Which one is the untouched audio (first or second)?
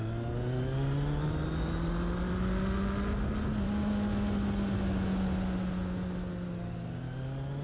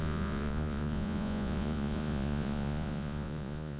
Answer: first